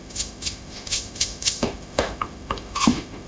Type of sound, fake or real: fake